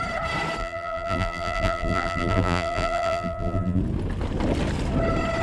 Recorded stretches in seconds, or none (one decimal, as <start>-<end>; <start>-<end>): 0.0-0.6; 3.8-5.4